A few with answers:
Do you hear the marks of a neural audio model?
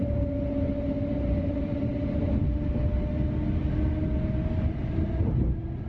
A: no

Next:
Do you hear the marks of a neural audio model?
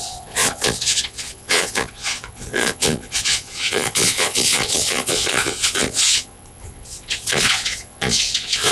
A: yes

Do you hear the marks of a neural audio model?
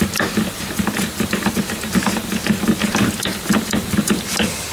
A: no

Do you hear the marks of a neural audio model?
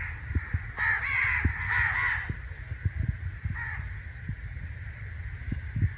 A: no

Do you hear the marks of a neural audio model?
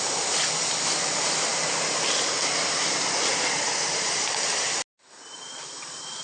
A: no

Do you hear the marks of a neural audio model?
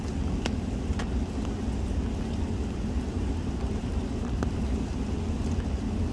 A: no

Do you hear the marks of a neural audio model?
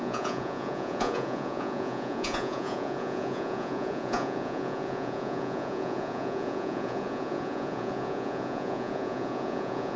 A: yes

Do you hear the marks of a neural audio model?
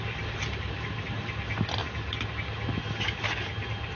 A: no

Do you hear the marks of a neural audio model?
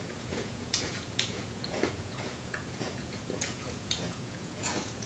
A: yes